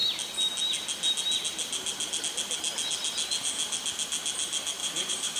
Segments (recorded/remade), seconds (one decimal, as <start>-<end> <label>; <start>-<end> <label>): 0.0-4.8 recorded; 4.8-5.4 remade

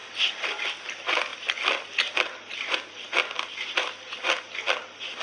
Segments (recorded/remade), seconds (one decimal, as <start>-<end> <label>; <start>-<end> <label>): 0.0-0.7 remade; 0.7-1.3 recorded; 1.3-4.4 remade; 4.4-5.2 recorded

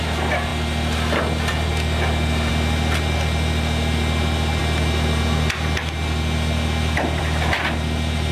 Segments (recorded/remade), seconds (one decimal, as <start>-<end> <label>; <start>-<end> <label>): 0.0-8.3 recorded